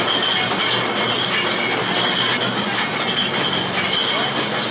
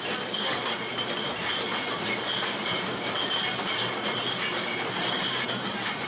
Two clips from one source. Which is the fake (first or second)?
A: second